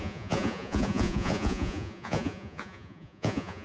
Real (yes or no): no